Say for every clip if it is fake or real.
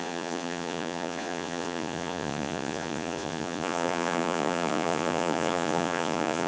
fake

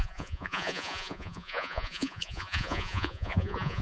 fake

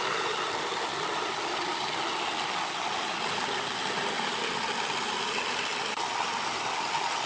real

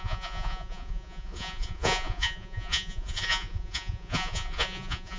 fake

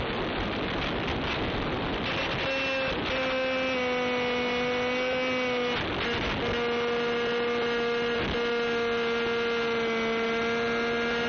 real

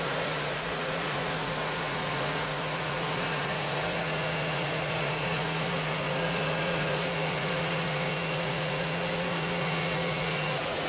fake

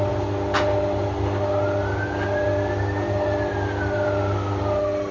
real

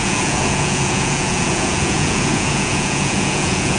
fake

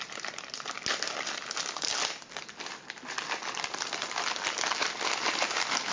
real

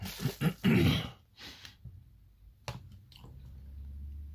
real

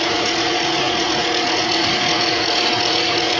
fake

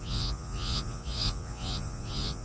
fake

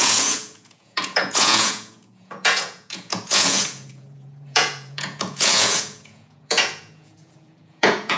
fake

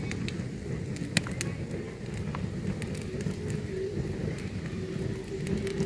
real